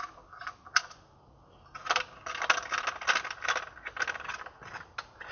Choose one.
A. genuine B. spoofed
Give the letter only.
A